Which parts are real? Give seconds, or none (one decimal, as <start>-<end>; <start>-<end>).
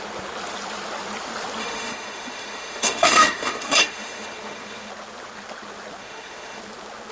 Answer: 0.0-1.6; 4.9-6.0; 6.6-7.1